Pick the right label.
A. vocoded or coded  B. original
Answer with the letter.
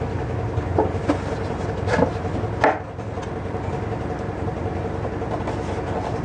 B